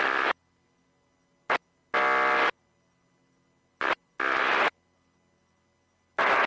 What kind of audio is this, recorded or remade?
recorded